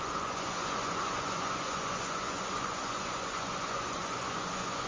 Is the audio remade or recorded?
remade